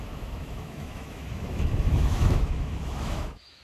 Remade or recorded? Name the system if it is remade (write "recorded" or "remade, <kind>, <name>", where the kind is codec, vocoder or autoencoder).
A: remade, autoencoder, DAC-VAE